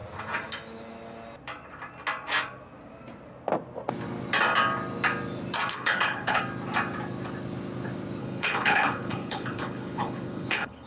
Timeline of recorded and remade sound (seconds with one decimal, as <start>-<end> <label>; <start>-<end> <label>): 0.0-5.7 recorded; 5.7-6.4 remade; 6.4-8.2 recorded; 8.2-10.9 remade